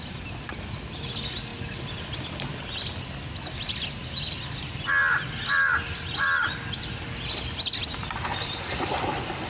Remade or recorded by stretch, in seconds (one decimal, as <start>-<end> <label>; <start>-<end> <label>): 0.0-9.5 recorded

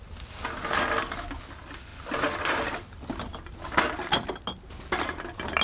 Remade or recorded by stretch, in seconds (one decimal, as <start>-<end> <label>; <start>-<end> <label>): 0.0-5.6 recorded

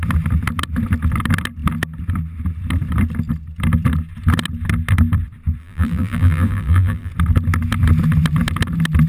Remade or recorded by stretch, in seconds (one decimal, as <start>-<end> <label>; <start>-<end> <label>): 0.0-5.6 recorded; 5.6-7.1 remade; 7.1-9.1 recorded

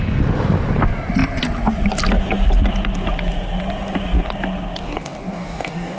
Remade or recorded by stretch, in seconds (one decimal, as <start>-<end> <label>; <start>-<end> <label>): 0.0-4.8 recorded; 4.8-6.0 remade

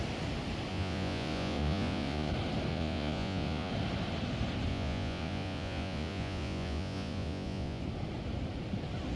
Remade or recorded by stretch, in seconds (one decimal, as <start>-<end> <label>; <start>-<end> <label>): 0.0-0.7 recorded; 0.7-2.3 remade; 2.3-2.7 recorded; 2.7-3.7 remade; 3.7-4.7 recorded; 4.7-7.8 remade; 7.8-9.2 recorded

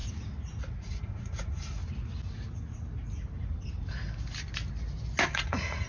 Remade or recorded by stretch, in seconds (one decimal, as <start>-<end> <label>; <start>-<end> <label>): 0.0-0.8 recorded; 0.8-1.8 remade; 1.8-5.3 recorded; 5.3-5.9 remade

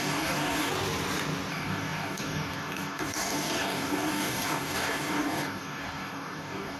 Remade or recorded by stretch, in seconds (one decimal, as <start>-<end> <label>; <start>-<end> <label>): 0.0-0.7 remade; 0.7-1.5 recorded; 1.5-6.8 remade

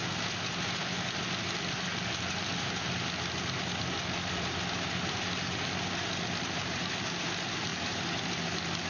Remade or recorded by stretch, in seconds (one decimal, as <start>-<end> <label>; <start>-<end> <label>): 0.0-8.9 recorded